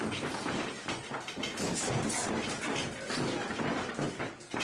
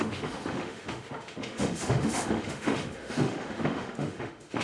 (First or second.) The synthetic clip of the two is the second